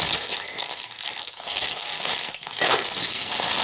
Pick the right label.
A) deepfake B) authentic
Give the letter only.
A